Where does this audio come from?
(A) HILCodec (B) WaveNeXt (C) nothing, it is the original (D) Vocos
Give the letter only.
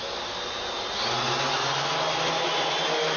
C